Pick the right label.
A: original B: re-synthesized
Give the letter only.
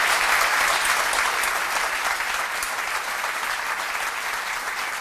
A